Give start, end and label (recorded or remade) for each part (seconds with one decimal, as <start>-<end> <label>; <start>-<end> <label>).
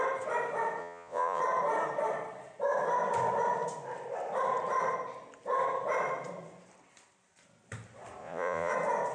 0.0-0.8 recorded; 0.8-1.4 remade; 1.4-8.2 recorded; 8.2-8.7 remade; 8.7-9.1 recorded